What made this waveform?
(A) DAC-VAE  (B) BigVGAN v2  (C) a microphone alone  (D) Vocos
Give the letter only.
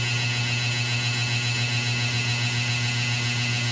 C